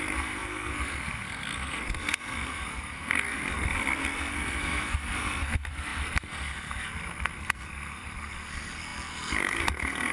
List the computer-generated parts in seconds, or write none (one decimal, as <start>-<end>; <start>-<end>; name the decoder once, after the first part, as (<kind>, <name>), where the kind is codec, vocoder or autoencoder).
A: 0.0-10.1 (codec, SNAC)

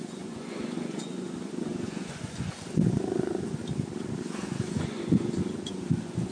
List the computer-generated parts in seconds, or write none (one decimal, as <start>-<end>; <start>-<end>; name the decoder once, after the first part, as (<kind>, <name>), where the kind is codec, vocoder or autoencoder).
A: 0.0-3.6 (vocoder, Vocos); 4.2-6.3

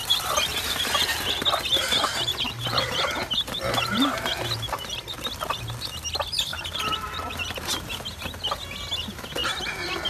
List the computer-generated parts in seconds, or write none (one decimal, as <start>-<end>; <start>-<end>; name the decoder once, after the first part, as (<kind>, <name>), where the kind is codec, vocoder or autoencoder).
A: 1.8-4.5 (vocoder, BigVGAN v2); 6.5-8.2

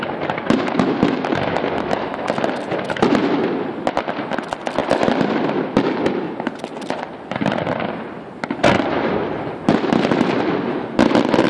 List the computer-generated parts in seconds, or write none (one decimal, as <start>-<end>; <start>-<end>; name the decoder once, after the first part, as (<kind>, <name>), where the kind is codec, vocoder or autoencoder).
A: none